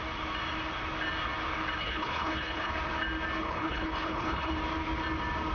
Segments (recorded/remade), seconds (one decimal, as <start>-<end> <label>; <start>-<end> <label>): 0.0-1.8 recorded; 1.8-2.7 remade; 2.7-3.4 recorded; 3.4-4.5 remade; 4.5-5.5 recorded